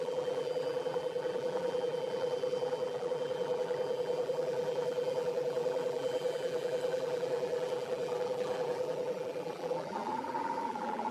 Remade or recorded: remade